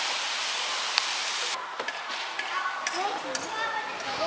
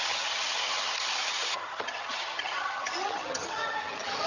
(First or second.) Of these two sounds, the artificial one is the second